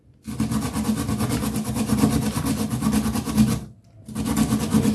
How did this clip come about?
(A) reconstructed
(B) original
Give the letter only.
B